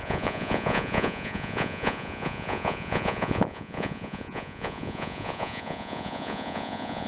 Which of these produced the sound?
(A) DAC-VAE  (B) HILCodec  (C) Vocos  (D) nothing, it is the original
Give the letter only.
C